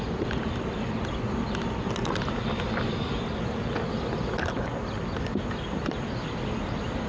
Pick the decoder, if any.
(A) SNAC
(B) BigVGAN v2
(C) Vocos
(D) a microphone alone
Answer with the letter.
D